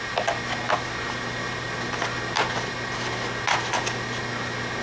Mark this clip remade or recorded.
recorded